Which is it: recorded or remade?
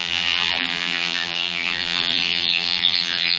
remade